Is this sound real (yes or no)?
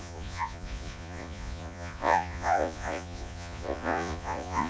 no